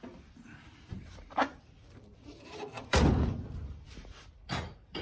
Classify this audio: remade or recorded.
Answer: remade